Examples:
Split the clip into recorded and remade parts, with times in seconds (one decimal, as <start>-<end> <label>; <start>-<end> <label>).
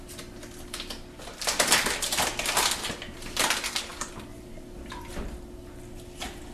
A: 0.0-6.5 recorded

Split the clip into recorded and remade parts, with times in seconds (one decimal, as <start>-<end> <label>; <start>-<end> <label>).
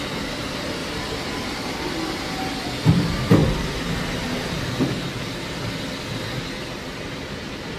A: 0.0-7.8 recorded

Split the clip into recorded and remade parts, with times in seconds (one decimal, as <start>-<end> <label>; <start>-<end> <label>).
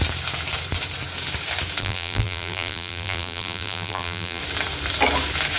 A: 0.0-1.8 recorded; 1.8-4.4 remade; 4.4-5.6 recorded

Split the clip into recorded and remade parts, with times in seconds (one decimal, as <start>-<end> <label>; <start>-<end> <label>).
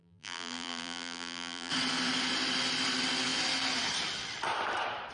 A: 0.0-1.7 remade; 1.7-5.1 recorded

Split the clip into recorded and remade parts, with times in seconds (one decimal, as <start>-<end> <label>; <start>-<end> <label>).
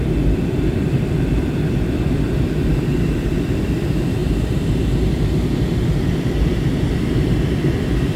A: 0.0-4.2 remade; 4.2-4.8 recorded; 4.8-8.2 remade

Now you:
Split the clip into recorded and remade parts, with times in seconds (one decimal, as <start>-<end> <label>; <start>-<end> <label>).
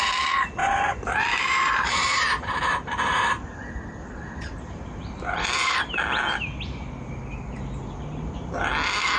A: 0.0-0.6 recorded; 0.6-5.8 remade; 5.8-9.2 recorded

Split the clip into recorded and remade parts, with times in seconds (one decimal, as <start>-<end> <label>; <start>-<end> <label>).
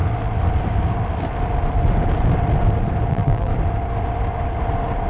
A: 0.0-3.1 recorded; 3.1-3.5 remade; 3.5-5.1 recorded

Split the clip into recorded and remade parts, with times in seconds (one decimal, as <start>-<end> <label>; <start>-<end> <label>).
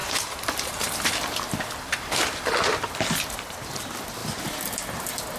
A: 0.0-3.2 remade; 3.2-5.4 recorded